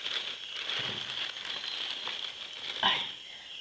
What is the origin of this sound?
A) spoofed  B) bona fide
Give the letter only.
B